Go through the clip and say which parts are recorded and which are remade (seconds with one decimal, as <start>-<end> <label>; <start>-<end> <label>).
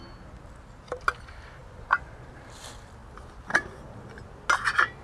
0.0-1.6 recorded; 1.6-2.3 remade; 2.3-5.0 recorded